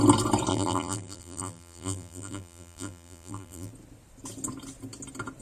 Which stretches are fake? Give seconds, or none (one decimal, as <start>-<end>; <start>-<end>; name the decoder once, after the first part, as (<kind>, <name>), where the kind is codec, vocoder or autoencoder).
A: 0.5-3.7 (vocoder, BigVGAN v2)